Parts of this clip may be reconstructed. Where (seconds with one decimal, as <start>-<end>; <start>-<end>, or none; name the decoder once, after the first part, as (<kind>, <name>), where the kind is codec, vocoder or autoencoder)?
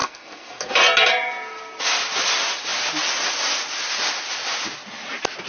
0.0-0.7 (codec, SNAC)